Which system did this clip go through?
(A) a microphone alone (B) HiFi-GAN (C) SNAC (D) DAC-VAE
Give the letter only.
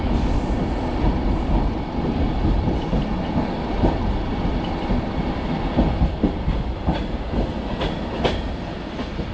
A